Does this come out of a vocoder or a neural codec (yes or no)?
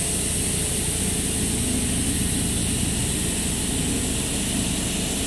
no